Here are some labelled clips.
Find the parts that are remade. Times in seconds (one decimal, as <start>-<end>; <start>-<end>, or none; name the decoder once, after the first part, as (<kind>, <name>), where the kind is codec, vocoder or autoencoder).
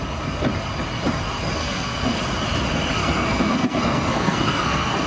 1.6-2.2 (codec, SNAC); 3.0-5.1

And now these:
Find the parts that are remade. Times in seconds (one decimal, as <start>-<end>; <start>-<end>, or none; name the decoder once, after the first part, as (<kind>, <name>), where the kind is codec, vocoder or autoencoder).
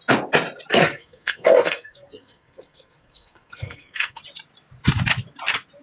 0.7-4.2 (codec, SNAC)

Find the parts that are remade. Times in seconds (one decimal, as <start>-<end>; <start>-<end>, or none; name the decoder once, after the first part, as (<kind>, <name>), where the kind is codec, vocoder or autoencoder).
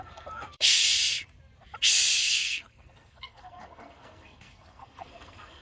0.0-0.8 (codec, SNAC); 2.2-5.6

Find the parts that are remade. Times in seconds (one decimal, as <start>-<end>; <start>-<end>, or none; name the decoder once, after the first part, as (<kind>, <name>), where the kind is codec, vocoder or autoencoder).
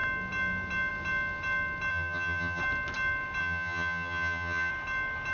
1.9-2.6 (vocoder, HiFi-GAN); 3.4-4.7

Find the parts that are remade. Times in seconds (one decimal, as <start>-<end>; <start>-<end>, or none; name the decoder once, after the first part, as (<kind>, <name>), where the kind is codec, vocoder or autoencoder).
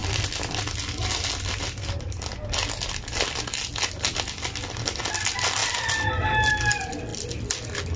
none